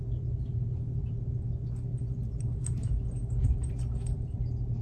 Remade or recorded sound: recorded